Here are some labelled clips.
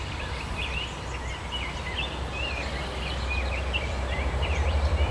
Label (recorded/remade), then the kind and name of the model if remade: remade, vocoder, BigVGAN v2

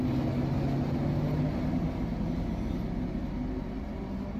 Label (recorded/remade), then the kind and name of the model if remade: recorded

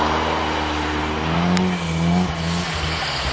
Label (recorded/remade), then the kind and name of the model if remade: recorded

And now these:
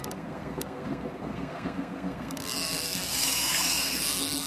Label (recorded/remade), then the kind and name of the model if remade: remade, codec, SNAC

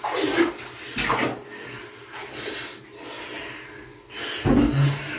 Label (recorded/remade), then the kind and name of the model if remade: recorded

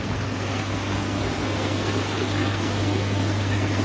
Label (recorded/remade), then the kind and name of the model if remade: remade, codec, SNAC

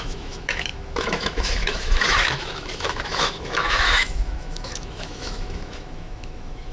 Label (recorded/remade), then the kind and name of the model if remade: remade, autoencoder, DAC-VAE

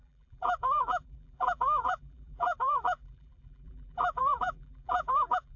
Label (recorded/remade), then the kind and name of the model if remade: remade, vocoder, BigVGAN v2